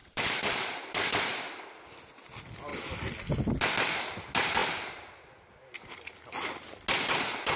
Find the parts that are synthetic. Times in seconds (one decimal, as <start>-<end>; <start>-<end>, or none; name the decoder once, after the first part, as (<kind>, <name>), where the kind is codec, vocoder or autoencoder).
0.0-1.1 (vocoder, BigVGAN v2)

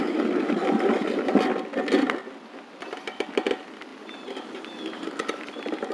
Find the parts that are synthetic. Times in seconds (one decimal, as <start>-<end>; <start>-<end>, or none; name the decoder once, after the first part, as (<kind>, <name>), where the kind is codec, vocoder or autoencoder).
3.9-5.9 (vocoder, BigVGAN v2)

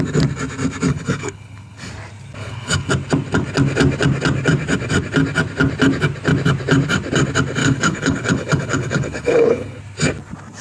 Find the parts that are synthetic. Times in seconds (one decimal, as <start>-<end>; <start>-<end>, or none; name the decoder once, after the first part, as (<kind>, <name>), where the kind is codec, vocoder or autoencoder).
0.9-1.9 (codec, HILCodec); 2.4-2.9; 7.6-9.8